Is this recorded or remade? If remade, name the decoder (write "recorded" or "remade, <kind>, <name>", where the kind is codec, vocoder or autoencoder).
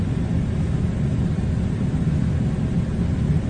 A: recorded